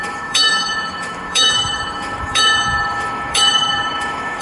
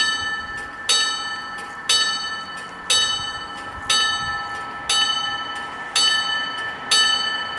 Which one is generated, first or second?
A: first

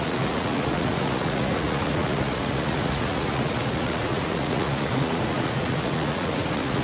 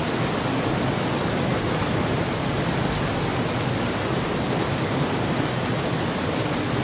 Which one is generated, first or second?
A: first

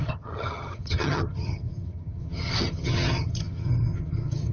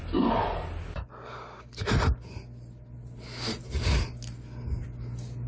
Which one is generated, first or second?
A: first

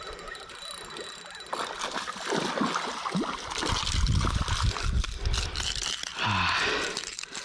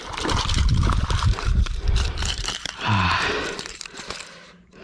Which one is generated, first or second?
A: second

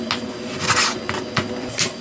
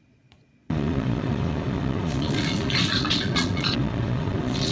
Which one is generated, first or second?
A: second